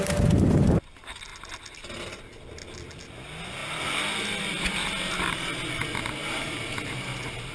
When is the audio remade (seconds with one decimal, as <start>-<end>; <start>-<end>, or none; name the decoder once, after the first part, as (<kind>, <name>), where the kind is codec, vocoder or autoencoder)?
none